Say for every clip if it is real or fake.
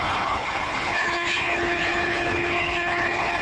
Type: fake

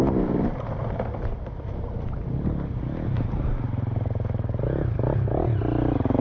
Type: real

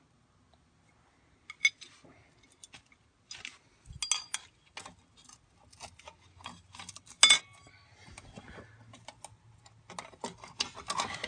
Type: real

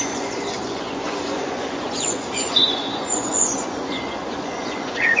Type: fake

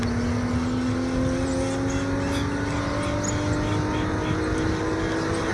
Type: real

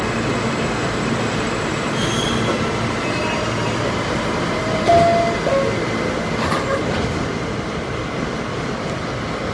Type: real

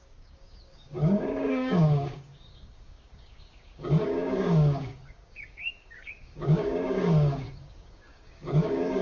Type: fake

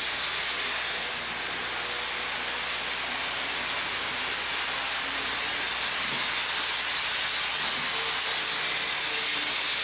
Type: real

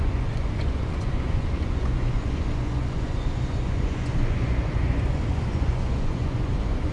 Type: fake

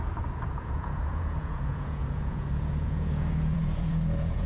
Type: fake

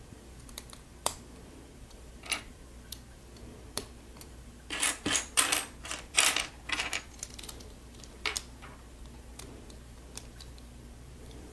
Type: fake